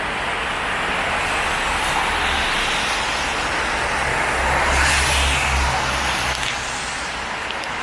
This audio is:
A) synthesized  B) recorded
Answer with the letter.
B